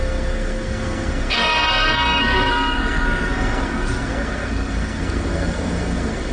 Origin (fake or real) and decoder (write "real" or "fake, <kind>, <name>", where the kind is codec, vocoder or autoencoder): fake, codec, SNAC